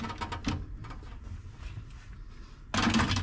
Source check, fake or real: real